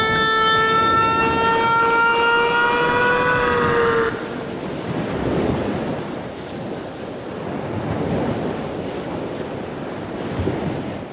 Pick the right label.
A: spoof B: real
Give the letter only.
B